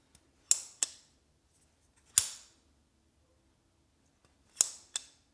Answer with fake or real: real